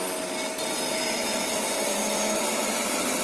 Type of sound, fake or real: real